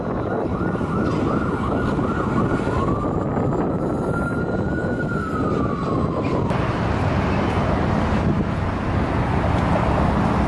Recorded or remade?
recorded